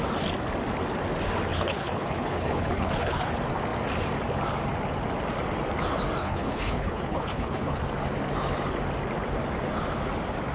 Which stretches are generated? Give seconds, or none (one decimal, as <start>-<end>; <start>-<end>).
1.5-3.3; 6.2-7.8